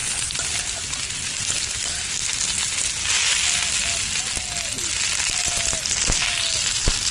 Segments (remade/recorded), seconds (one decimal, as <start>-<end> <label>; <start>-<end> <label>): 0.0-7.1 recorded